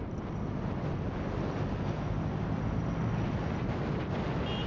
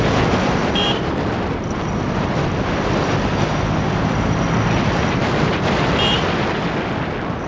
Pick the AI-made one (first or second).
second